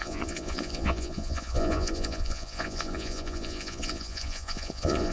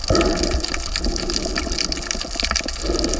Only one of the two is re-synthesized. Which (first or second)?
first